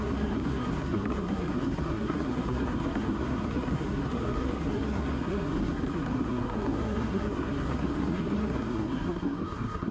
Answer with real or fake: fake